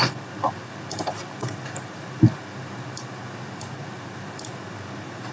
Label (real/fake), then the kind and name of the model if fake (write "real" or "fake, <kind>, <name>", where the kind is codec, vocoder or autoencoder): real